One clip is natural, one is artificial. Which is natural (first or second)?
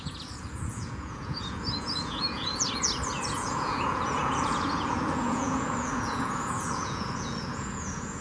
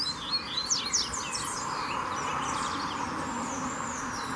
second